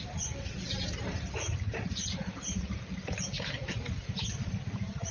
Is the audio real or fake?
fake